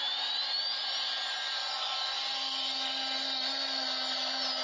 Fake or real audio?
real